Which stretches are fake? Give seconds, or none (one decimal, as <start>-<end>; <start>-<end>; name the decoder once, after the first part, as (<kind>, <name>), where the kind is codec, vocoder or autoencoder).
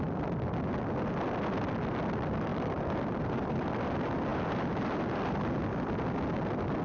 2.5-3.7 (vocoder, BigVGAN v2); 4.3-5.1